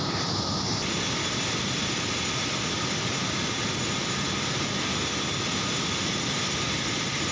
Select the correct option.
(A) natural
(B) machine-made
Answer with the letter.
A